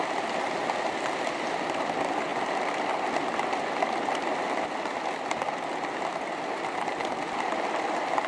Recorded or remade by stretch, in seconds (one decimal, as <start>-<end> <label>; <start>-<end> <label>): 0.0-8.3 recorded